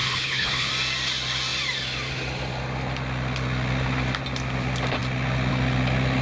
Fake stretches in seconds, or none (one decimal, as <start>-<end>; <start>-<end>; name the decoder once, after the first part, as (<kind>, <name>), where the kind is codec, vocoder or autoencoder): 0.0-0.7 (codec, HILCodec)

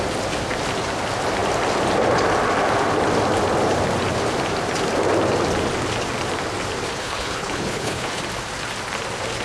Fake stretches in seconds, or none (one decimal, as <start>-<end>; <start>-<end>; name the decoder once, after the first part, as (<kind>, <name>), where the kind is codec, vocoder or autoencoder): 7.0-8.2 (codec, HILCodec)

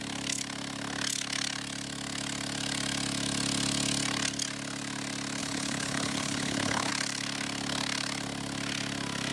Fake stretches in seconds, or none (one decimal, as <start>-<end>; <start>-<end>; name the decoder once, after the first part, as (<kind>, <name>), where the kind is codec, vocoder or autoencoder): 5.4-6.9 (codec, HILCodec)